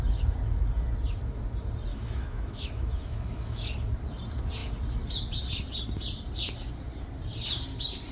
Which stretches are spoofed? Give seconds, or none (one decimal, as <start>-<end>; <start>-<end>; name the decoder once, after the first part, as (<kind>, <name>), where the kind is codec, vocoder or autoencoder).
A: 1.9-3.9 (autoencoder, DAC-VAE)